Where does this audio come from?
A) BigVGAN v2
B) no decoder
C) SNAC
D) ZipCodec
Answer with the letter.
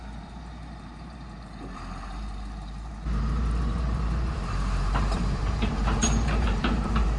A